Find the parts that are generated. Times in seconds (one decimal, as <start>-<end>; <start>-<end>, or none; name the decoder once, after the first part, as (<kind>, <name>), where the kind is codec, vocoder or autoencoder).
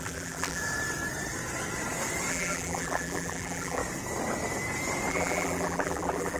0.0-0.6 (vocoder, BigVGAN v2); 2.3-3.8; 5.1-6.4